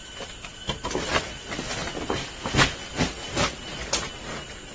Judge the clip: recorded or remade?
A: recorded